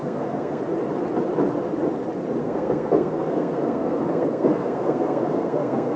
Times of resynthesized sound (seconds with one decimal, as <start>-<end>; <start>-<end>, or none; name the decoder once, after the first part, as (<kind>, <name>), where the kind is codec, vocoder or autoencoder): 0.0-0.6 (codec, SNAC); 2.4-6.0